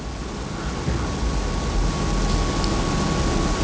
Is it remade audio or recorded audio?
recorded